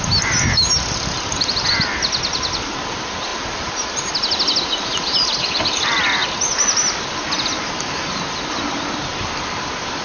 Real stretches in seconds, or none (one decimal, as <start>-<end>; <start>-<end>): 0.0-3.3; 4.1-10.0